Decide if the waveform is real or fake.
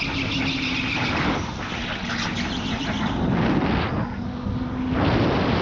real